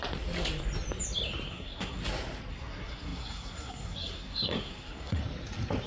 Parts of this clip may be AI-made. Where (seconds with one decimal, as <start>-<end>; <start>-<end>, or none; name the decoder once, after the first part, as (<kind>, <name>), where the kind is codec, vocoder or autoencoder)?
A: 1.5-2.0 (codec, SNAC); 2.5-5.2